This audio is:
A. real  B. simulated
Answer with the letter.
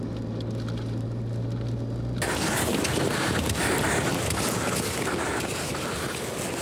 A